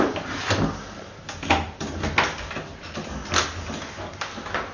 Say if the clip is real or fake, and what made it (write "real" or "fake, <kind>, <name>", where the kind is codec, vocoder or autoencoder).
real